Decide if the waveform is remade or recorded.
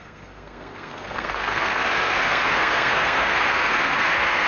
remade